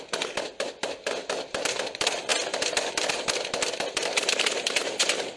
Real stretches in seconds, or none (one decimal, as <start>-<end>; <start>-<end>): 0.0-5.4